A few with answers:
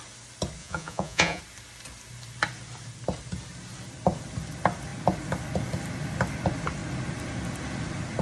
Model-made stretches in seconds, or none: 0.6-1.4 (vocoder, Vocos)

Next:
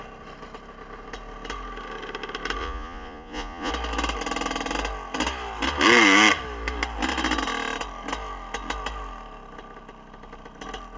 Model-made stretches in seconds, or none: 2.6-3.7 (vocoder, Vocos)

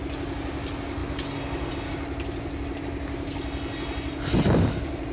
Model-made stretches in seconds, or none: none